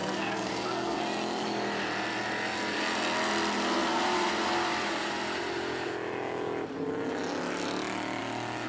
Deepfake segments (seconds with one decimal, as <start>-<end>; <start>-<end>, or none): 0.0-1.0